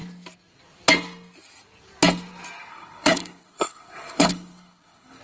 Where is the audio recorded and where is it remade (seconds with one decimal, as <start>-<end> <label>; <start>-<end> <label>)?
0.0-2.7 recorded; 2.7-5.2 remade